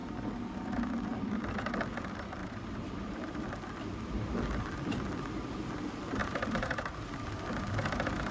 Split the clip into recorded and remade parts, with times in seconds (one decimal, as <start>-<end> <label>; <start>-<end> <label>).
0.0-0.9 remade; 0.9-2.4 recorded; 2.4-3.4 remade; 3.4-6.2 recorded; 6.2-7.1 remade; 7.1-8.3 recorded